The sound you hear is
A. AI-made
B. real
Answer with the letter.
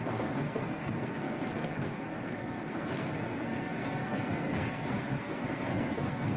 A